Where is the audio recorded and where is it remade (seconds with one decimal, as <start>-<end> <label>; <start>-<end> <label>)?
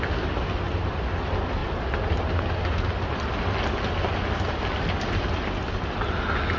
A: 0.0-6.6 recorded